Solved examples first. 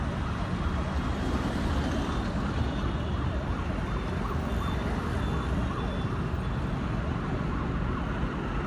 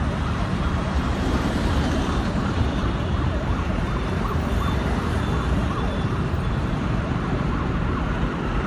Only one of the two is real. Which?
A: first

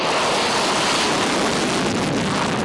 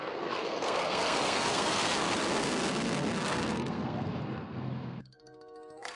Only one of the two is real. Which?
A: first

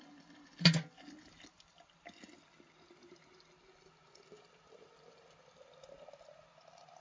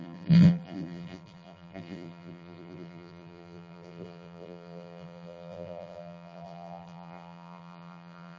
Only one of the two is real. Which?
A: first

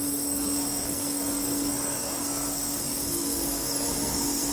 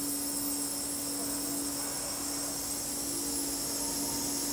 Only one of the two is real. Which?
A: second